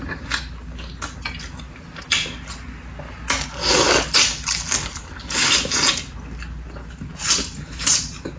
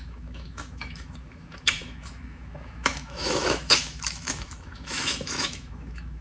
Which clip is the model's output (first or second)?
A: second